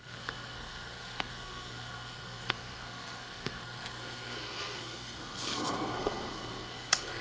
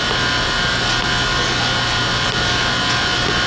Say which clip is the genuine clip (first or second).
second